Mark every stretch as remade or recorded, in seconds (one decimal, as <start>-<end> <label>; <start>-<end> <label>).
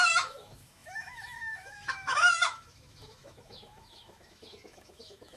0.0-5.4 remade